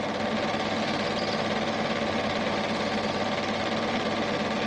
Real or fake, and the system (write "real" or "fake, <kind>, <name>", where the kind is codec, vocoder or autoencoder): real